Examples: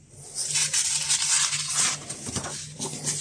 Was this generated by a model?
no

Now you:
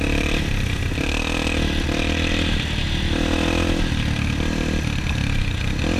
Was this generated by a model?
no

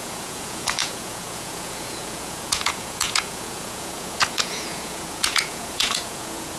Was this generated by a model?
yes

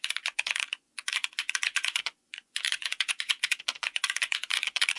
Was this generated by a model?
yes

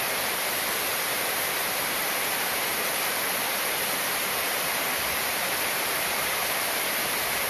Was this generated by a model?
yes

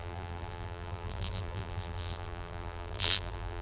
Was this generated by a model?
yes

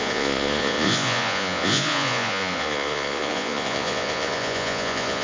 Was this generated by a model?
yes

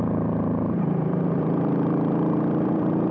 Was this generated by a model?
yes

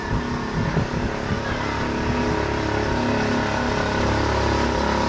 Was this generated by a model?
no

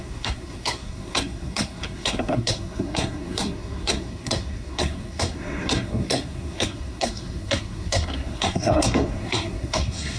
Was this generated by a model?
yes